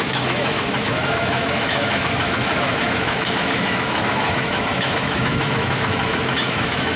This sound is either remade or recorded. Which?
remade